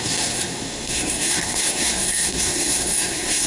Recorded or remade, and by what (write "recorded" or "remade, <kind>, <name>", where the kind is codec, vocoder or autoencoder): remade, codec, SNAC